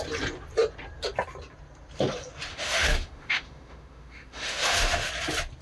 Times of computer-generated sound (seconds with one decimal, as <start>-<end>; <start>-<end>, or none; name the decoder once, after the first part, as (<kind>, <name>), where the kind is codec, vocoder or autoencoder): 2.5-5.1 (autoencoder, DAC-VAE)